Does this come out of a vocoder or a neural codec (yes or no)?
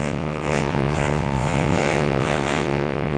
yes